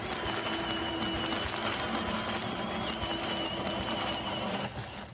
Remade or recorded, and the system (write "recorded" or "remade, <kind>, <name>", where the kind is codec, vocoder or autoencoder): recorded